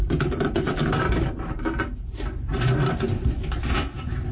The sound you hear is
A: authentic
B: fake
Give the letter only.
B